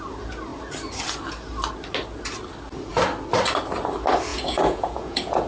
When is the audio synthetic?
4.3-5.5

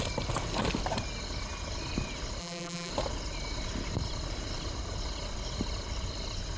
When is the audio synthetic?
2.4-2.9

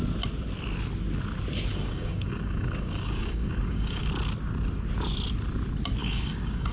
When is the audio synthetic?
1.7-4.1; 6.0-6.7

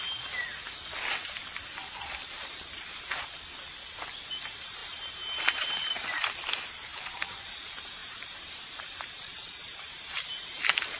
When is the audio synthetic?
4.8-5.9; 8.0-9.9